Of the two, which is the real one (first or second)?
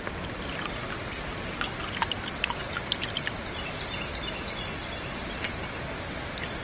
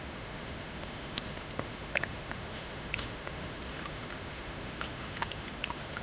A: first